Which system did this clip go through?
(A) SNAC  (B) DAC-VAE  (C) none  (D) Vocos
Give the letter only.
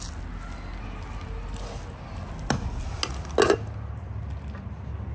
C